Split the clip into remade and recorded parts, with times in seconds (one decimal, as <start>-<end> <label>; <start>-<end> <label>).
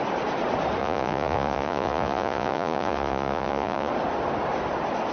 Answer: 0.0-0.8 recorded; 0.8-3.9 remade; 3.9-5.1 recorded